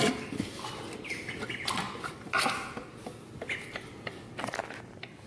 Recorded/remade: recorded